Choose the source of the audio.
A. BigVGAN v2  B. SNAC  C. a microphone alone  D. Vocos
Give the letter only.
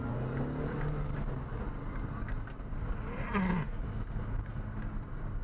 C